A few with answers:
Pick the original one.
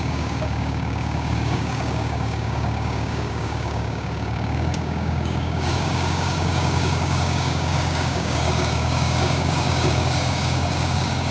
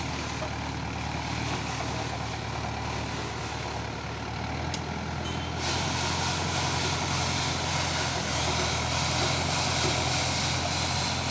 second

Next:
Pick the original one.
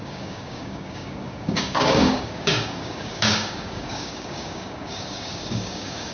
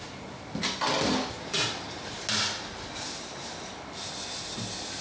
second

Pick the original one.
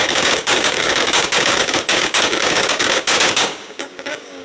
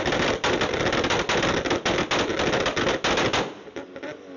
second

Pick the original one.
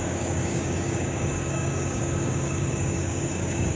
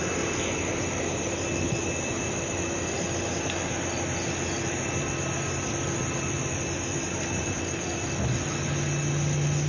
second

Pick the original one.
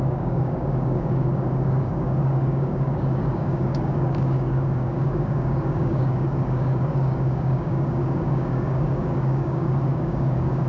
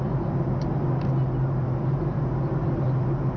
second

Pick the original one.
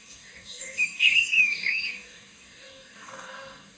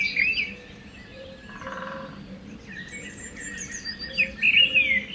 second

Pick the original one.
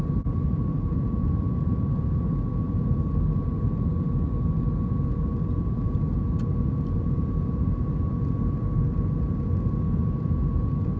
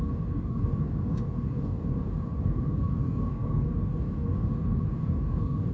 first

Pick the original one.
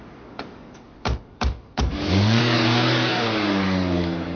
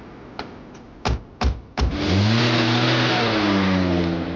second